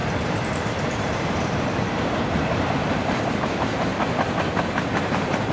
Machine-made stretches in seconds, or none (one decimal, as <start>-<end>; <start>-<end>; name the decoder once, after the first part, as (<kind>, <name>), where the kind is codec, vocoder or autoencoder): 0.0-3.9 (vocoder, BigVGAN v2); 5.1-5.5